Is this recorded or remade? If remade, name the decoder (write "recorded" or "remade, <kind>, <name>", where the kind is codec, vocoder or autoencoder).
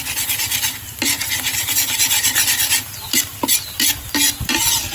recorded